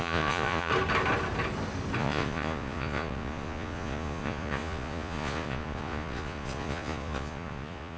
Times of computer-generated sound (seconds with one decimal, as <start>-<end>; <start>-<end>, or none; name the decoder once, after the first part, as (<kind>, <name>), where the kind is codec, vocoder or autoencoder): 0.0-0.7 (vocoder, Vocos); 2.0-8.0